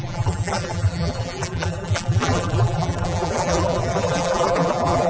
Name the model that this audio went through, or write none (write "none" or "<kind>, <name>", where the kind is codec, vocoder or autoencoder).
vocoder, BigVGAN v2